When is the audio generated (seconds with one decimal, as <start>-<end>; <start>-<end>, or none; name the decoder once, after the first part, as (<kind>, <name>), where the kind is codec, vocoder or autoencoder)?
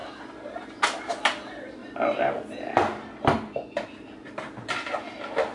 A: none